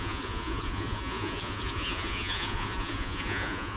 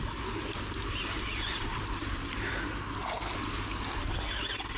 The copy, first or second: first